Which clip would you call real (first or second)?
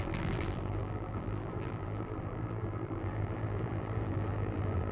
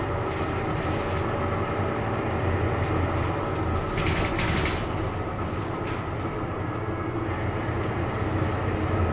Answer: second